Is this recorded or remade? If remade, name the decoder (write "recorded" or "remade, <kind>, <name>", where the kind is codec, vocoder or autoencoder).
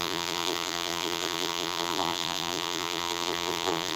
remade, vocoder, BigVGAN v2